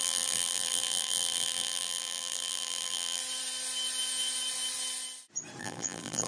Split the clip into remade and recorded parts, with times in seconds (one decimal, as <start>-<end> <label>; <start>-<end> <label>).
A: 0.0-3.2 remade; 3.2-5.6 recorded; 5.6-6.3 remade